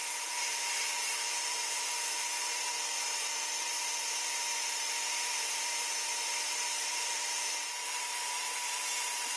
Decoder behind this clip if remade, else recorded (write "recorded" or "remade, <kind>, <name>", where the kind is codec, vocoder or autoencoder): remade, vocoder, BigVGAN v2